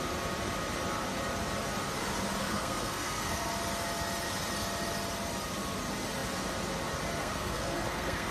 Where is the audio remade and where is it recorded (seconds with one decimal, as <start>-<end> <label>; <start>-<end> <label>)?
0.0-2.4 recorded; 2.4-3.5 remade; 3.5-7.2 recorded; 7.2-8.3 remade